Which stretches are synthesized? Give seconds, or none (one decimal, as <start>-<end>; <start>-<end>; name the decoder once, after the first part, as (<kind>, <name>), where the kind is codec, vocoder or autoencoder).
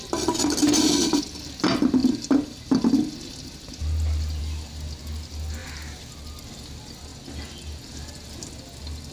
5.6-6.4 (vocoder, BigVGAN v2); 7.1-8.5